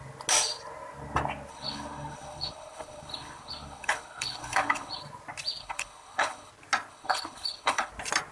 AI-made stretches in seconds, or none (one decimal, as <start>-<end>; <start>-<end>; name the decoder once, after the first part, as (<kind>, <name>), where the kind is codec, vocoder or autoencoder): 1.5-5.0 (codec, HILCodec); 5.6-6.5; 6.9-7.9